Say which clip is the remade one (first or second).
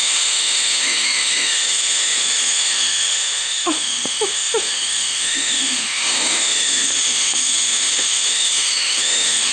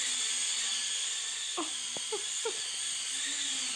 first